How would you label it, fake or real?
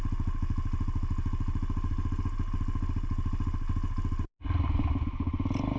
real